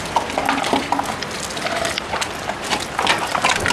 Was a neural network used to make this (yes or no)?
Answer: no